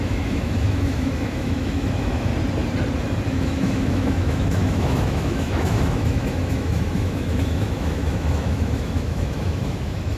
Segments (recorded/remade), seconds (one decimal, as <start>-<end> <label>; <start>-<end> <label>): 0.0-2.3 remade; 2.3-3.3 recorded; 3.3-10.2 remade